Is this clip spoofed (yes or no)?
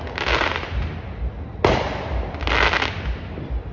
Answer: no